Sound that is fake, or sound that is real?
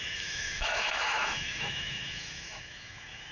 fake